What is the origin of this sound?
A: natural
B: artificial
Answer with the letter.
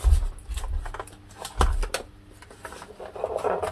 A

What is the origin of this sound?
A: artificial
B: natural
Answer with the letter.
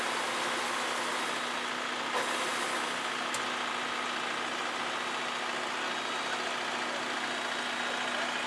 B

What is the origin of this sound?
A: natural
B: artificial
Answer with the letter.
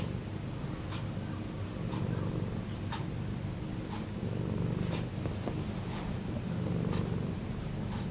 A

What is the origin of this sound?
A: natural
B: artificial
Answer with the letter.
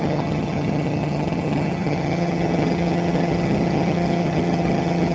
B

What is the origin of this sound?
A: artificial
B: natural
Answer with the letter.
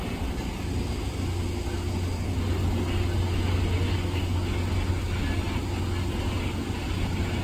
B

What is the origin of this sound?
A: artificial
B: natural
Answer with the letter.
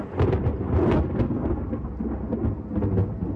B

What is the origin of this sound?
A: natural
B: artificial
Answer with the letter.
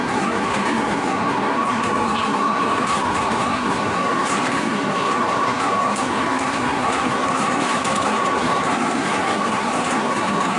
B